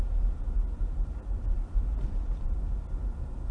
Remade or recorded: recorded